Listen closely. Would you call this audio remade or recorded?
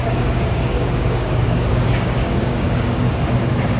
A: remade